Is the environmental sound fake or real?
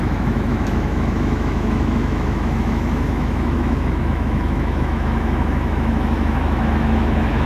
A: fake